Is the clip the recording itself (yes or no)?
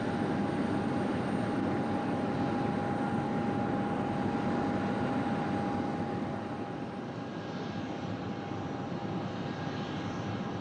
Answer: yes